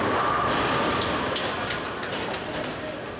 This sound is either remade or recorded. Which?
recorded